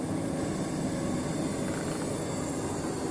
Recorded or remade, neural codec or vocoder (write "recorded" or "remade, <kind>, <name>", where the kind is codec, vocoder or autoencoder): recorded